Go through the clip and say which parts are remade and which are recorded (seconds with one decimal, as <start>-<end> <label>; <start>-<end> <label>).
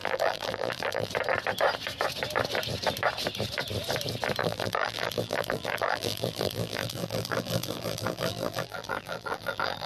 0.0-1.1 remade; 1.1-4.4 recorded; 4.4-9.9 remade